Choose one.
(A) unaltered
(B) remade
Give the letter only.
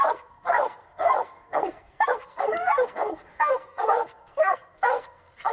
B